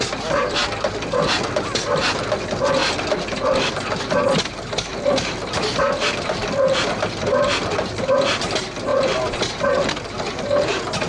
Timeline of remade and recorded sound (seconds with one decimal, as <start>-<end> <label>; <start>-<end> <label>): 0.0-0.6 recorded; 0.6-1.3 remade; 1.3-2.8 recorded; 2.8-3.7 remade; 3.7-4.9 recorded; 4.9-8.5 remade; 8.5-8.9 recorded; 8.9-9.9 remade; 9.9-11.1 recorded